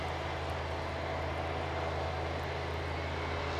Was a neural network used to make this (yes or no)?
no